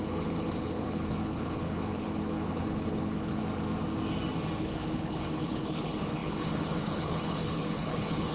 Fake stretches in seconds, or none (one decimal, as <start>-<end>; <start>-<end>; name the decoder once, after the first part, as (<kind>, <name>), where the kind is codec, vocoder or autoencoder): 0.0-3.4 (codec, HILCodec); 4.6-8.3